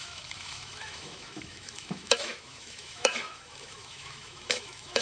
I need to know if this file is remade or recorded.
remade